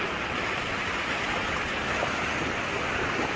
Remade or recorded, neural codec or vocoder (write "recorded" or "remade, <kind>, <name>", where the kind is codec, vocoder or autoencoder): recorded